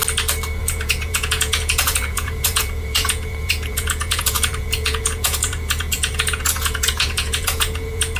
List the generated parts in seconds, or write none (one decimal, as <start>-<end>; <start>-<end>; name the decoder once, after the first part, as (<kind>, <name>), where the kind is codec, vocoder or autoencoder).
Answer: 0.6-8.2 (vocoder, Vocos)